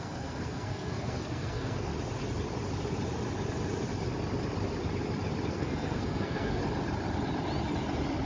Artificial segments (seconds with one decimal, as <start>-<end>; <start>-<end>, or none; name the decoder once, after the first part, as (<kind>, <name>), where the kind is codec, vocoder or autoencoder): 0.0-1.9 (codec, SNAC); 5.5-6.6